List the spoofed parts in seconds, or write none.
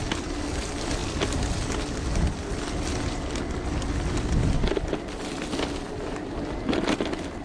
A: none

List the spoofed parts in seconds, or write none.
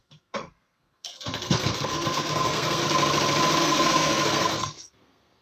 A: 0.0-2.8 (codec, SNAC); 3.6-5.4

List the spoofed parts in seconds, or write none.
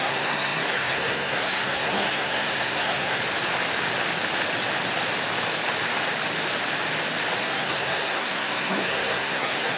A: 0.0-3.2 (codec, SNAC); 7.4-9.8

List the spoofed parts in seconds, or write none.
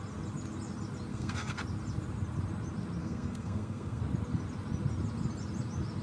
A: 1.1-1.6 (codec, SNAC); 3.0-4.0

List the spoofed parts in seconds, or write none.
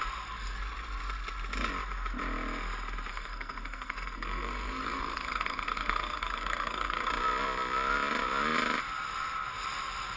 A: 3.1-7.1 (codec, SNAC)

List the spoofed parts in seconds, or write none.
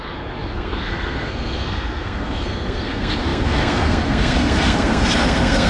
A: 0.0-5.7 (codec, SNAC)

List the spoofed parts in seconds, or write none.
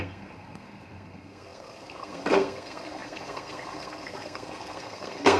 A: 0.0-5.4 (codec, SNAC)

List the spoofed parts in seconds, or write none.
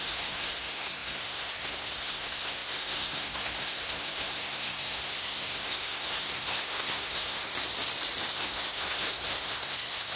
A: 0.0-7.5 (codec, SNAC); 8.3-10.1